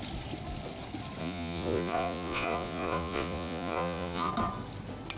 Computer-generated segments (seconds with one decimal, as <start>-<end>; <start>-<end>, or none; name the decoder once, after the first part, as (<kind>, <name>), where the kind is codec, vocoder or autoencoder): 1.2-4.3 (vocoder, Vocos)